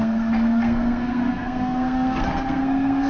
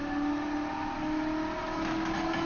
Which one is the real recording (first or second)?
second